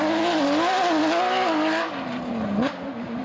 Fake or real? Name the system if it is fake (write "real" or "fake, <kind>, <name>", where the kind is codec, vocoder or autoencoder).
real